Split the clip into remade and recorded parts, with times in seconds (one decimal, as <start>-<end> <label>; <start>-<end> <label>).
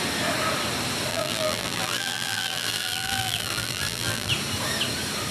0.0-1.1 recorded; 1.1-4.3 remade; 4.3-5.3 recorded